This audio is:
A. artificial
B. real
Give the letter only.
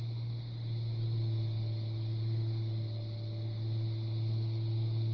B